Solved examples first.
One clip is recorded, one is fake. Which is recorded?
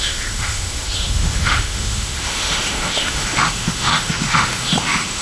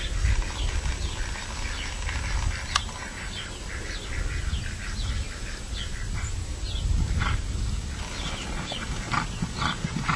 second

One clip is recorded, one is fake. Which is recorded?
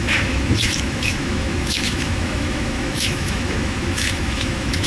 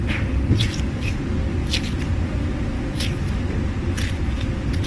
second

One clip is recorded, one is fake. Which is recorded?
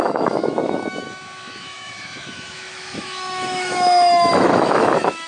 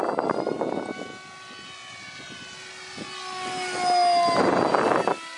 second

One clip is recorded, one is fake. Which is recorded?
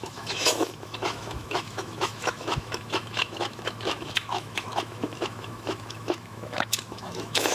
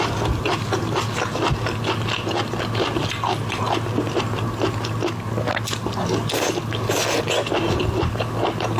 second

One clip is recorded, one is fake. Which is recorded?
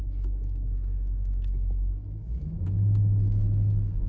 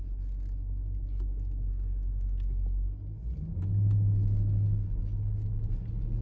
second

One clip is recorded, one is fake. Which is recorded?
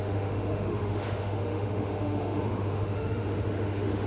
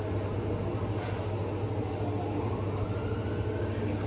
second